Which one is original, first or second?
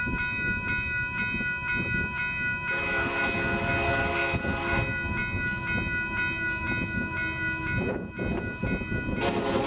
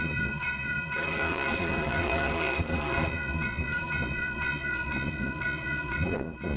first